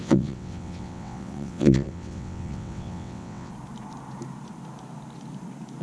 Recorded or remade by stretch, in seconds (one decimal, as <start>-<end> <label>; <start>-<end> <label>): 0.0-3.5 remade; 3.5-5.8 recorded

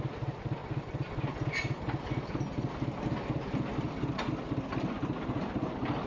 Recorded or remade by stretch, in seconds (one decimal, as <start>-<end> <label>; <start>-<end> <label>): 0.0-6.1 recorded

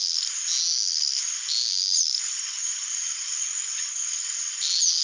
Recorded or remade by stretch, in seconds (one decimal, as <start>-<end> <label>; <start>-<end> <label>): 0.0-5.0 recorded

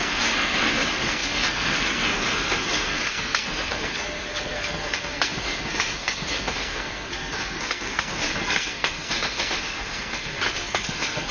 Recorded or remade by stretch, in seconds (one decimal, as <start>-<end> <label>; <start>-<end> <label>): 0.0-11.3 remade

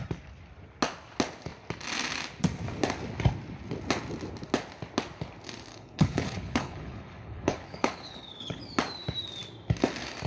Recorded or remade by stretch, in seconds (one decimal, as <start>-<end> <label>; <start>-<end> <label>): 0.0-5.7 recorded; 5.7-8.6 remade; 8.6-10.3 recorded